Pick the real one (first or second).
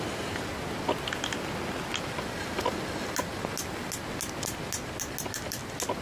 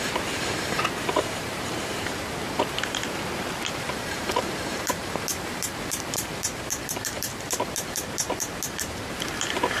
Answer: first